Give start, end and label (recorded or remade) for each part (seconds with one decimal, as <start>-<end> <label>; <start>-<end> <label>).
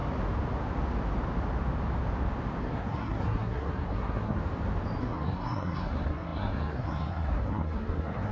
0.0-2.6 recorded; 2.6-4.4 remade; 4.4-5.0 recorded; 5.0-8.3 remade